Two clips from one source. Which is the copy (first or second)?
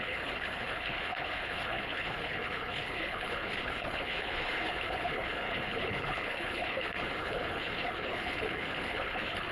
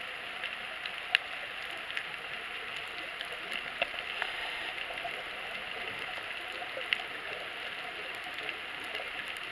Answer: first